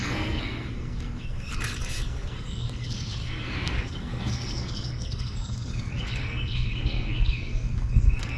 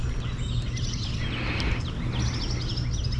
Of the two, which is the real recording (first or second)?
second